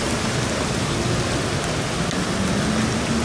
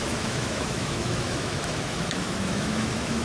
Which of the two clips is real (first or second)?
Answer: first